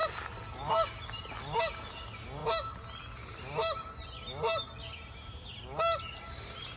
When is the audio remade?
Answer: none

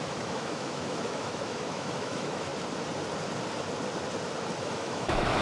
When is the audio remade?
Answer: 0.0-2.5 (autoencoder, DAC-VAE); 4.6-5.4

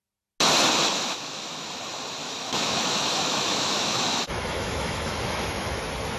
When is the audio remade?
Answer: 0.9-1.7 (autoencoder, DAC-VAE); 2.2-5.8